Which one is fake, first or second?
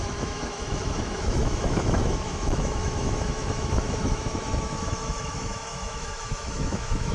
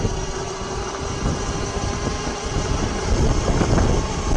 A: first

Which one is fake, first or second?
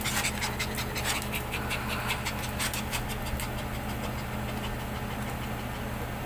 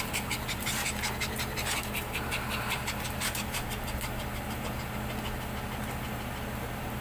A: second